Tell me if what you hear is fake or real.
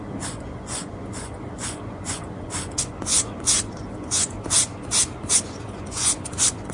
fake